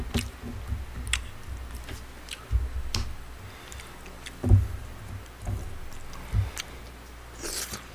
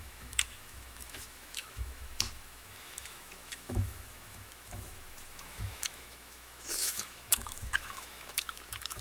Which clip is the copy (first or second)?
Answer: second